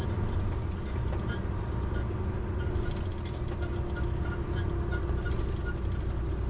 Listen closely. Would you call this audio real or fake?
real